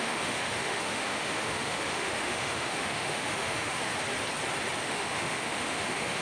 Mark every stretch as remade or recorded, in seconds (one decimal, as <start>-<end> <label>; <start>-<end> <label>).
0.0-3.9 remade; 3.9-4.8 recorded; 4.8-6.2 remade